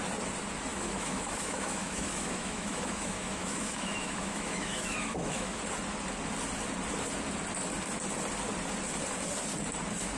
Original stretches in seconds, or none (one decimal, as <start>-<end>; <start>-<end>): 0.0-0.7; 5.6-10.2